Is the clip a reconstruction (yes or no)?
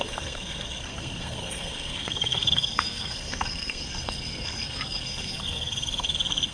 yes